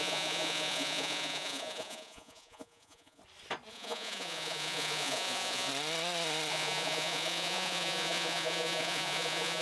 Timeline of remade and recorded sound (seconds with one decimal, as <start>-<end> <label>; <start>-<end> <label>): 0.0-3.2 remade; 3.2-3.7 recorded; 3.7-5.7 remade; 5.7-6.5 recorded; 6.5-9.6 remade